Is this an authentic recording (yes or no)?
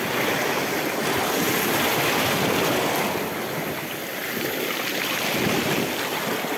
yes